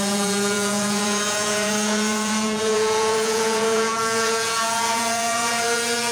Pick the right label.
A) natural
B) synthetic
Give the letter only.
B